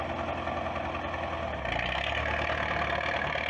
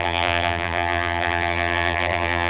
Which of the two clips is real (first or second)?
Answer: first